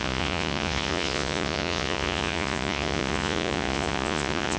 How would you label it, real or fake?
fake